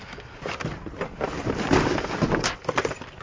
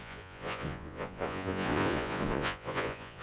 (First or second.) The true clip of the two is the first